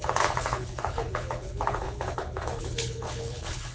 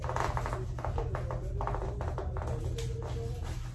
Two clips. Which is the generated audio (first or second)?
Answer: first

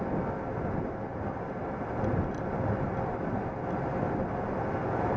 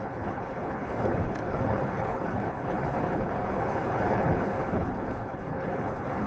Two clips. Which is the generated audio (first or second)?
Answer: second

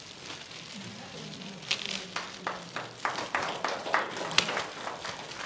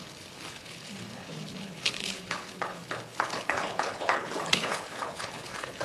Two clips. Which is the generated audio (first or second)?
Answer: second